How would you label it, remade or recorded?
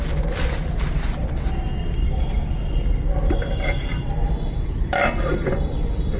recorded